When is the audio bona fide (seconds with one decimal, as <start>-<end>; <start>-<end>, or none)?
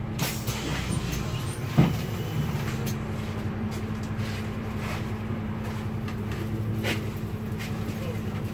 0.0-8.5